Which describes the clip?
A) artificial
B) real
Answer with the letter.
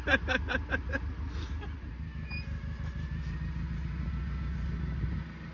B